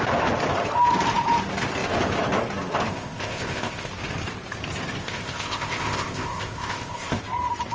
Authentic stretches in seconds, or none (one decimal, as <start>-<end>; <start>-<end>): 0.0-2.9; 3.9-5.0; 7.2-7.7